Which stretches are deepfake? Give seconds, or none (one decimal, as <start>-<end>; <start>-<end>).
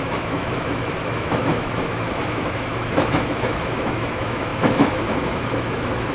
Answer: 0.0-6.1